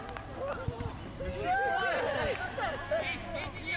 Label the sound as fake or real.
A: real